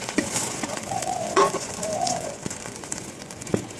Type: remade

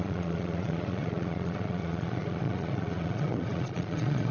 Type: remade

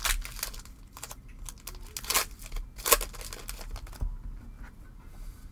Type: recorded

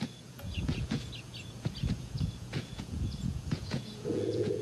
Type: remade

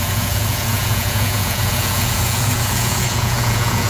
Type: remade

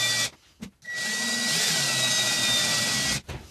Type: recorded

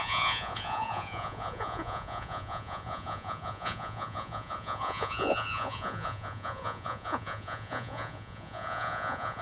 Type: remade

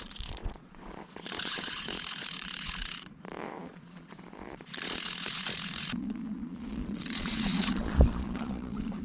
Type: remade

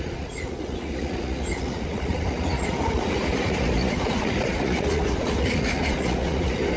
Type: remade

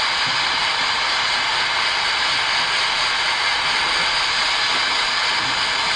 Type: recorded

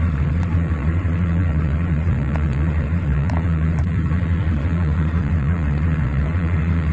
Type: remade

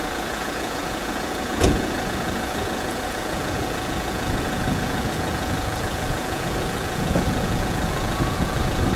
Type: remade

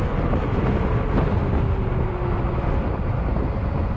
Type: recorded